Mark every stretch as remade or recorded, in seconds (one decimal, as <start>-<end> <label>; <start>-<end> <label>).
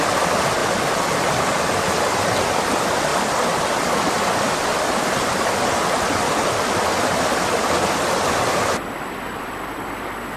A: 0.0-10.4 recorded